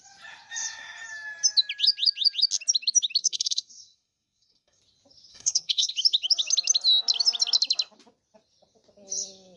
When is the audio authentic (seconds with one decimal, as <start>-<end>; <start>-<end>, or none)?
0.0-3.2; 4.8-5.3; 5.9-9.6